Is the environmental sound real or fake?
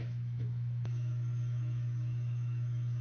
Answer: fake